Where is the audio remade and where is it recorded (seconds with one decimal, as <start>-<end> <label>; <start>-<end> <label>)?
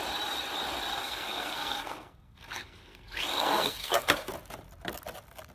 0.0-1.0 recorded; 1.0-4.3 remade; 4.3-5.5 recorded